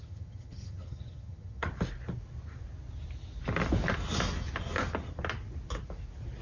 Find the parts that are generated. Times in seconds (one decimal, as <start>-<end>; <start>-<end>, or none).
0.0-1.7